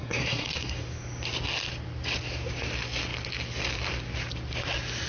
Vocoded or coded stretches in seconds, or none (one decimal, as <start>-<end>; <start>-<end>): 0.0-0.8